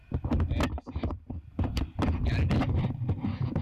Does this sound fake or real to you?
real